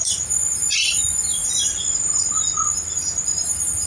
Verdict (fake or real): fake